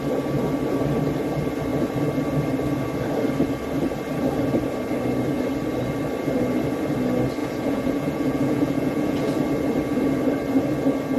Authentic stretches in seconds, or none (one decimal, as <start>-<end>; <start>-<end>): 0.0-7.4; 9.4-11.2